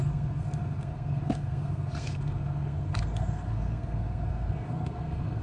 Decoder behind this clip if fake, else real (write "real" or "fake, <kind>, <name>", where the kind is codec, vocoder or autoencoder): fake, codec, SNAC